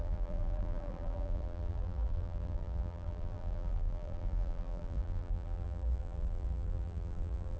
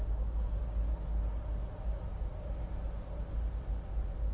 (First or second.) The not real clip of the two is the first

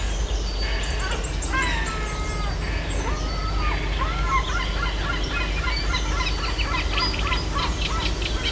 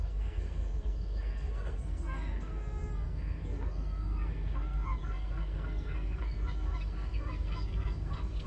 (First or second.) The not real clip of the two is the second